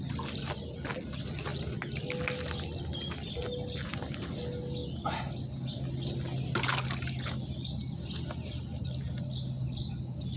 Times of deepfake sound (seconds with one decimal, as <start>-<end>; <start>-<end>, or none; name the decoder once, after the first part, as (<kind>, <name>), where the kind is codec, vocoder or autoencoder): none